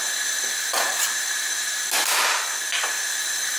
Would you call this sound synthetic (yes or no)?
no